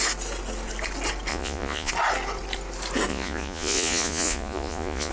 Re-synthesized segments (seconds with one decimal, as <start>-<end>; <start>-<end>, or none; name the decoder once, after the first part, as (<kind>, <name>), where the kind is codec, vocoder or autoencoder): 1.3-1.9 (vocoder, Vocos); 3.1-5.1